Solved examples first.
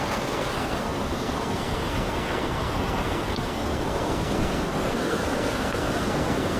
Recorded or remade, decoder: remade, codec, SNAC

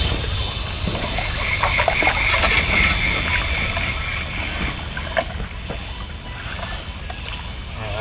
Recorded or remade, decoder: recorded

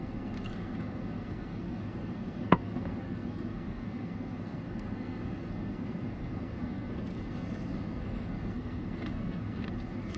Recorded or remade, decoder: remade, codec, SNAC